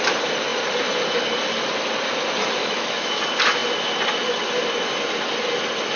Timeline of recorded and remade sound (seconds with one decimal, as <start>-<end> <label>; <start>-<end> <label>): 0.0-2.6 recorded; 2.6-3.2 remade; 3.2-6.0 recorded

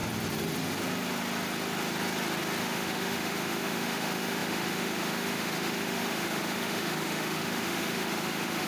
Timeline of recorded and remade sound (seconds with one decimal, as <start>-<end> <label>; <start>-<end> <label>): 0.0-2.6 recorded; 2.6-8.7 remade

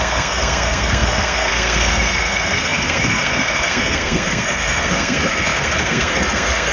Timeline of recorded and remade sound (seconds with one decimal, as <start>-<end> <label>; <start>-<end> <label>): 0.0-6.7 remade

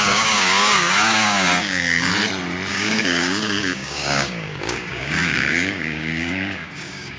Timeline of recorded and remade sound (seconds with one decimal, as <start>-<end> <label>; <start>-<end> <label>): 0.0-2.1 remade; 2.1-2.7 recorded; 2.7-7.2 remade

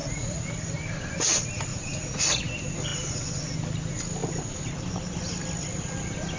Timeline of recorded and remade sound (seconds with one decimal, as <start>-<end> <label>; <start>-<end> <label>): 0.0-0.5 remade; 0.5-1.7 recorded; 1.7-2.4 remade; 2.4-6.4 recorded

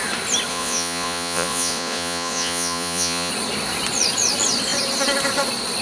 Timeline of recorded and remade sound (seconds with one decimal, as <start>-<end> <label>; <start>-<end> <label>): 0.0-0.5 recorded; 0.5-3.3 remade; 3.3-5.8 recorded